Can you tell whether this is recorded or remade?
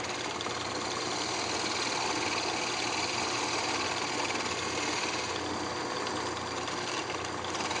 recorded